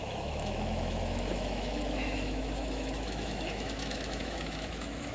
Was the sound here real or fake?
fake